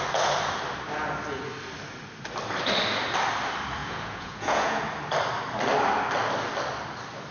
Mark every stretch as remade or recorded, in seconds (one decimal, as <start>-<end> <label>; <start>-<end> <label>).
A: 0.0-3.8 recorded; 3.8-4.8 remade; 4.8-7.3 recorded